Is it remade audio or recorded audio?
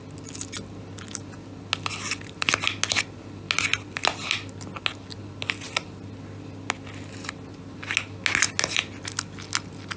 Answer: recorded